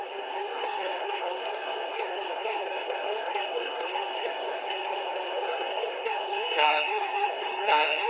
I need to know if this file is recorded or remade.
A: remade